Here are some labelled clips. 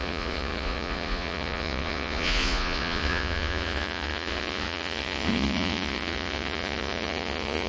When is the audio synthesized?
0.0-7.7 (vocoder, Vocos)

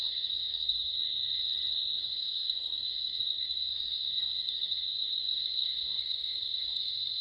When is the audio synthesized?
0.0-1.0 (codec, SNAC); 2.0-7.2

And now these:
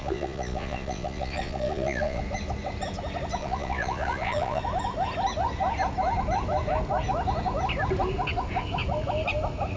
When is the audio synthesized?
0.0-2.2 (vocoder, Vocos); 3.4-4.6